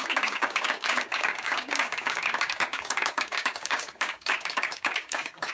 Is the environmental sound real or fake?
fake